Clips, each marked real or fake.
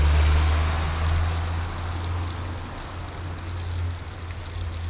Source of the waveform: real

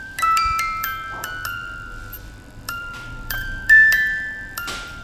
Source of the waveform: fake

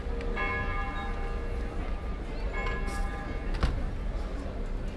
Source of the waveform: real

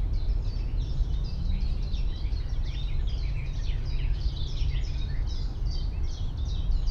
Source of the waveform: real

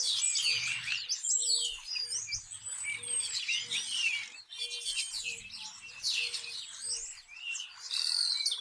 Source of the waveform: real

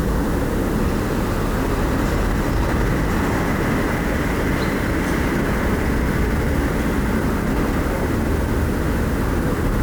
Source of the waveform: real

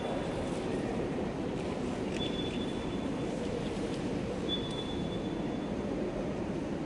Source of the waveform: fake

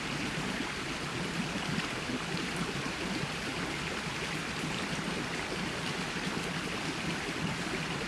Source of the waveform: real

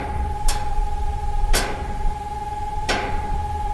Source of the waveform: fake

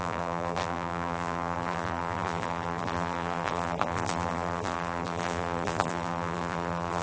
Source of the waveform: fake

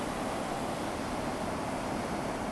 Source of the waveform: real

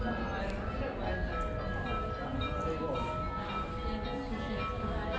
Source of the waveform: real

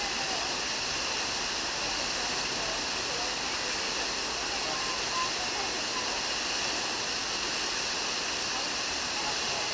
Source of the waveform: real